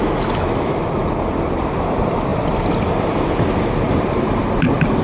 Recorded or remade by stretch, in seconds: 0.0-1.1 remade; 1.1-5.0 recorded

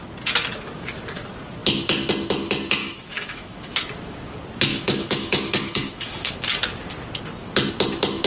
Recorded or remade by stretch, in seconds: 0.0-2.8 recorded; 2.8-3.7 remade; 3.7-4.7 recorded; 4.7-6.3 remade; 6.3-8.3 recorded

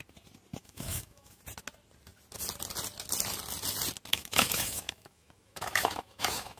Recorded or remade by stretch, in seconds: 0.0-0.6 recorded; 0.6-1.4 remade; 1.4-4.1 recorded; 4.1-6.6 remade

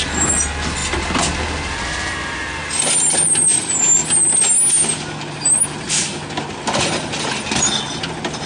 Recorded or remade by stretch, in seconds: 0.0-8.5 recorded